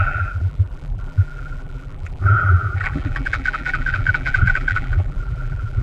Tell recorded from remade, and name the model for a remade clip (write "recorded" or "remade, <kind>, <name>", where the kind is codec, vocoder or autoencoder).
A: remade, vocoder, BigVGAN v2